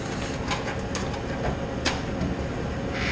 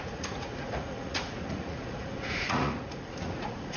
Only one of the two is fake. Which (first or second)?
second